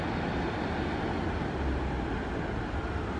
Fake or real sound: real